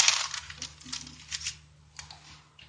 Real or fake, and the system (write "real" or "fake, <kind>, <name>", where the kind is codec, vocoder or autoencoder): fake, vocoder, BigVGAN v2